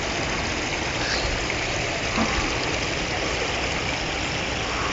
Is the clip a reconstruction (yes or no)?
no